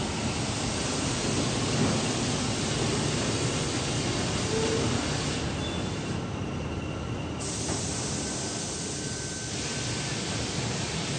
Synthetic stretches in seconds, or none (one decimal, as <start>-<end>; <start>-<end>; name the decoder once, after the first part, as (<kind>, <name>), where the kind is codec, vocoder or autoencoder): none

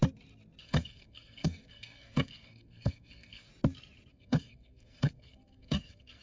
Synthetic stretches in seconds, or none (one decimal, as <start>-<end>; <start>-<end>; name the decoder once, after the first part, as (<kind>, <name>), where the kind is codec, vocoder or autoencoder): 0.6-3.5 (codec, SNAC); 4.1-6.2

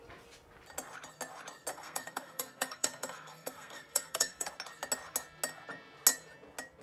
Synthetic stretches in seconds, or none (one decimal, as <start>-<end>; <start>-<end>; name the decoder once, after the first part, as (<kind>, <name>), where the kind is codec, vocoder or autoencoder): 1.7-4.5 (codec, SNAC)

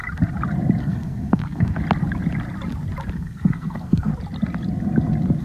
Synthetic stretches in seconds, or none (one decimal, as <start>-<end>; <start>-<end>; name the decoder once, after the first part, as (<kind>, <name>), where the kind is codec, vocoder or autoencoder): 0.8-1.8 (codec, SNAC); 3.1-4.1

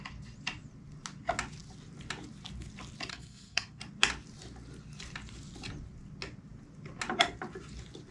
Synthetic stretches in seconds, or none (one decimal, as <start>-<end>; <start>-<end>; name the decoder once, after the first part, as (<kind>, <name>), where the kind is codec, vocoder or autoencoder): 3.1-3.8 (codec, SNAC)

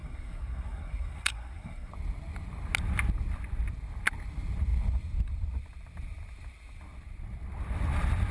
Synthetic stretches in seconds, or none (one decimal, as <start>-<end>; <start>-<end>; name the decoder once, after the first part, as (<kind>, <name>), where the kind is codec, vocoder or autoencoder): 0.0-1.9 (codec, SNAC)

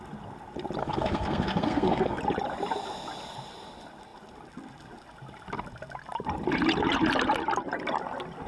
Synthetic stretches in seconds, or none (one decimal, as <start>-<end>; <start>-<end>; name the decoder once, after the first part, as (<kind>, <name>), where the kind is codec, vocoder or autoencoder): 0.8-2.2 (codec, SNAC)